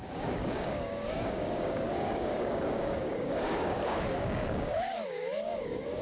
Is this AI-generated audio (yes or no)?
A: yes